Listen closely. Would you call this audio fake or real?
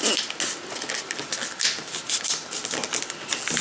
real